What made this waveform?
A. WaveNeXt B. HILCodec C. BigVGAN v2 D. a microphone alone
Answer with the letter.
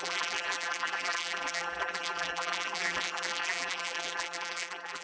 C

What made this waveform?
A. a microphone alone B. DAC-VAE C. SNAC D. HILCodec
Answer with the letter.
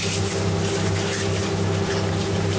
A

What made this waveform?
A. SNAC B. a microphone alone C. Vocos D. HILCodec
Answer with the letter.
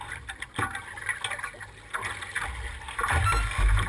B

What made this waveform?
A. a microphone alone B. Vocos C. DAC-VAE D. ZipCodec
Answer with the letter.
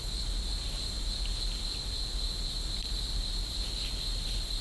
A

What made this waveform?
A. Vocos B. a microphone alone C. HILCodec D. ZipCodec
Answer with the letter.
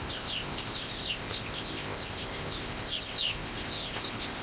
D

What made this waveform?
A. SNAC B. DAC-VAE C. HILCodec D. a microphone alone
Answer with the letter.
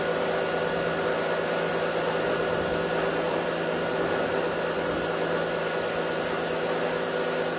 D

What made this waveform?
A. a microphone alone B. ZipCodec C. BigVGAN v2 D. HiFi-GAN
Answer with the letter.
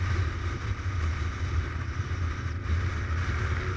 A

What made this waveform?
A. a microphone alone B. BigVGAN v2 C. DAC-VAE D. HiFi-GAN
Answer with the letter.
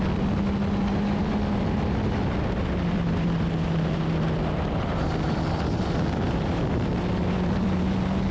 A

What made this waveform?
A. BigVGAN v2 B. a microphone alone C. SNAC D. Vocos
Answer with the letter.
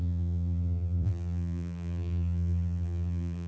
A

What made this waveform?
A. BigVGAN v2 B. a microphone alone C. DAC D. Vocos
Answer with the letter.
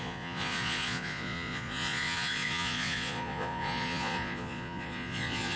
D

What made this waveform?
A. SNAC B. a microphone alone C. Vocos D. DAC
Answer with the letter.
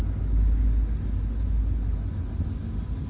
B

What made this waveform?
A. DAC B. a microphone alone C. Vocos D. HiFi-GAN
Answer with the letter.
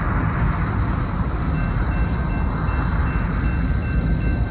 B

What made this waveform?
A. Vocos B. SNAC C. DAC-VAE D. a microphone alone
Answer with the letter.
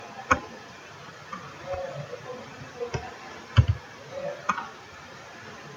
D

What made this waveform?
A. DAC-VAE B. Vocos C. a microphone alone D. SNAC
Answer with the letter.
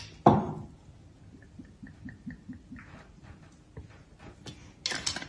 C